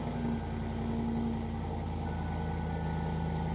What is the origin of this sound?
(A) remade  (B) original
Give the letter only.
B